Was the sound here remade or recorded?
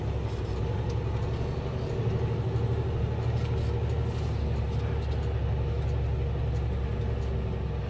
recorded